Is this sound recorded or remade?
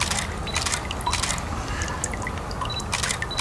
recorded